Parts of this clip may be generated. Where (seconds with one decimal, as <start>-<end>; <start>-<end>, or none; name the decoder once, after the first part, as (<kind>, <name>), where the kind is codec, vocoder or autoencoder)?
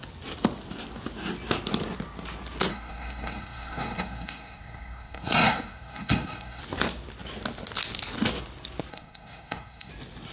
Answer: 2.7-6.6 (codec, SNAC); 8.9-9.9